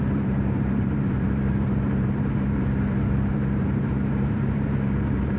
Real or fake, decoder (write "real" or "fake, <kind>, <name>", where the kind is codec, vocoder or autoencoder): fake, vocoder, BigVGAN v2